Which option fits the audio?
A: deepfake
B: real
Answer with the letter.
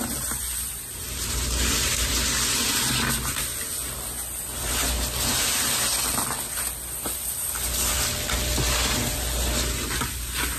B